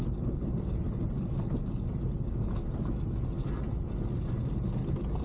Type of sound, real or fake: real